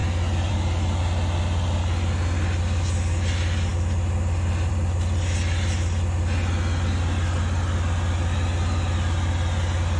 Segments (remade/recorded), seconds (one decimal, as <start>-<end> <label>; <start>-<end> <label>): 0.0-10.0 recorded